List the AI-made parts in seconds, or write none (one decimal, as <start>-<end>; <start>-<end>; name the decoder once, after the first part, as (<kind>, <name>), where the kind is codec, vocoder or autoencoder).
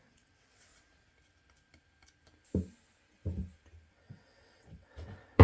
0.0-0.7 (vocoder, WaveNeXt); 3.9-5.4